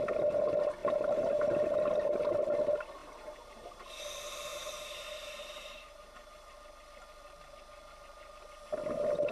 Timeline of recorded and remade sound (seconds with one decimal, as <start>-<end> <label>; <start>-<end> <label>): 0.0-0.8 recorded; 0.8-1.5 remade; 1.5-3.0 recorded; 3.0-4.0 remade; 4.0-4.5 recorded; 4.5-6.5 remade; 6.5-9.3 recorded